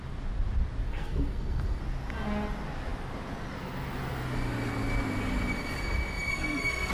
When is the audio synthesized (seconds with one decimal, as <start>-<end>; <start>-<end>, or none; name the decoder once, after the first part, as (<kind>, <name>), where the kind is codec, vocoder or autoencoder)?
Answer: 0.9-1.8 (codec, SNAC); 6.3-6.9